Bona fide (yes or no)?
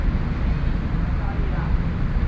yes